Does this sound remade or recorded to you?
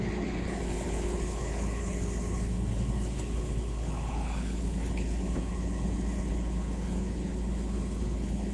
remade